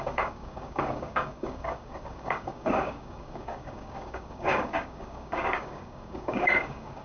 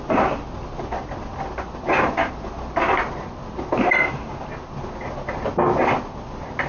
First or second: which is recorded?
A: second